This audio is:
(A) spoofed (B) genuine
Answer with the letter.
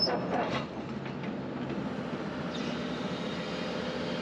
B